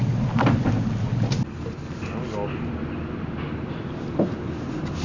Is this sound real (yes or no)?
yes